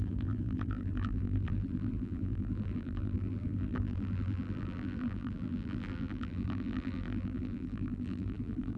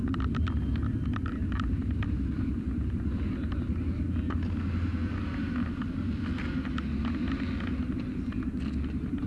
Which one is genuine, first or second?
second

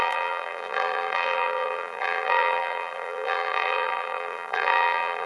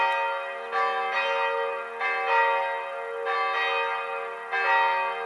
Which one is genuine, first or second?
second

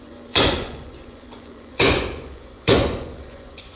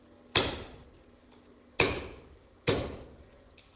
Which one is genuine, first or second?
second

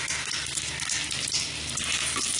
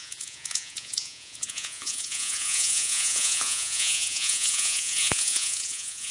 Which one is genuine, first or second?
first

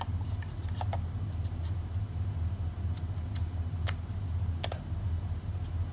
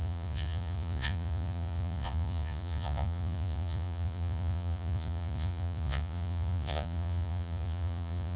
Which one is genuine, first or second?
first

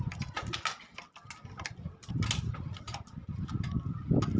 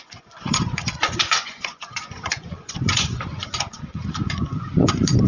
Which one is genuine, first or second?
first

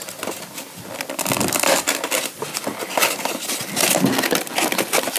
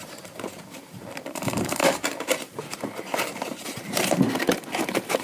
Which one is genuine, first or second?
first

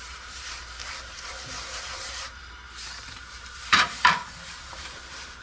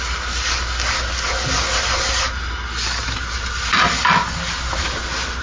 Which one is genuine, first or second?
second